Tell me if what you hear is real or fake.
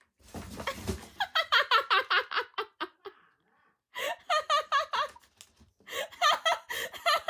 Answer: real